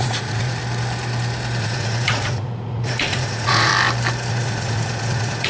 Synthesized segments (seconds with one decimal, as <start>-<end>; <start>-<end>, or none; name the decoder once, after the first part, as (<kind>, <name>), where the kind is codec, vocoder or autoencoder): 0.0-0.6 (vocoder, Vocos); 1.6-3.7; 4.3-5.5